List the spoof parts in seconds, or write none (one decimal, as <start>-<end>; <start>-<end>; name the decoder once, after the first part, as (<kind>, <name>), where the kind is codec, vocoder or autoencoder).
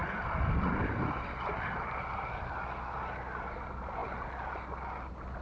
none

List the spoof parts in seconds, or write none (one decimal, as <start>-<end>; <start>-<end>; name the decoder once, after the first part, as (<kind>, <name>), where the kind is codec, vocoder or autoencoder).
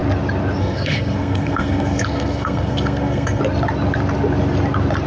0.6-3.4 (codec, SNAC)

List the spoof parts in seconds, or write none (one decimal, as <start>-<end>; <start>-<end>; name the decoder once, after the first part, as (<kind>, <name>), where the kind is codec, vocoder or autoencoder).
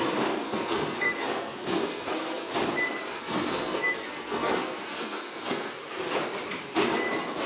0.4-2.5 (codec, SNAC); 3.1-5.8